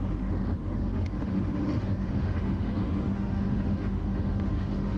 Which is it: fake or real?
fake